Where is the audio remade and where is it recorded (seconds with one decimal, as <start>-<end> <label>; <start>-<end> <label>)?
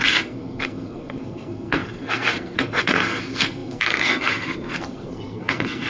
0.0-5.9 remade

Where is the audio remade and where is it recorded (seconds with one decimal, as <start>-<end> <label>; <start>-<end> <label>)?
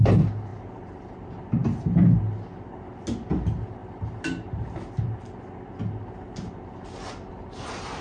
0.0-0.5 recorded; 0.5-1.1 remade; 1.1-8.0 recorded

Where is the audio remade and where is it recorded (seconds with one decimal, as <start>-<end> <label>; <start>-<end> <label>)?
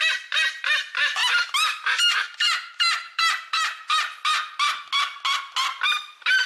0.0-1.2 recorded; 1.2-3.5 remade; 3.5-6.5 recorded